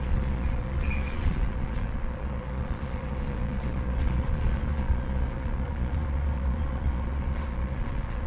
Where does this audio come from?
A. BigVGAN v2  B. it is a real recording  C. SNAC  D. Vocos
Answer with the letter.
D